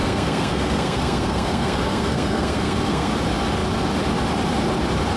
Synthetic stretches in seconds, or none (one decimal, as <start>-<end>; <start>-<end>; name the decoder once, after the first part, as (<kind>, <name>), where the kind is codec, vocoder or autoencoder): 0.0-3.1 (codec, SNAC)